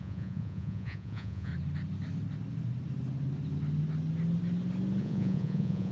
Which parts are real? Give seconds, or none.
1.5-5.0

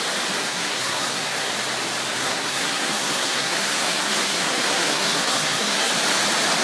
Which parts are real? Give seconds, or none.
0.0-0.4; 1.5-2.1; 5.9-6.6

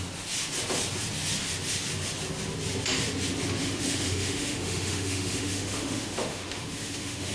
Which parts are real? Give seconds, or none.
0.0-3.6

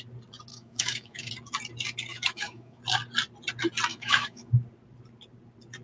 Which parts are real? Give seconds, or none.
0.0-0.5; 1.3-2.1; 2.8-3.9; 4.5-5.8

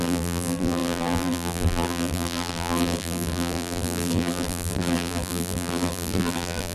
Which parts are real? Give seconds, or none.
none